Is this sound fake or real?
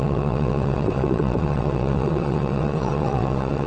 fake